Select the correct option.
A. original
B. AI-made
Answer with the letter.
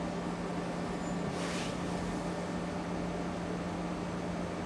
A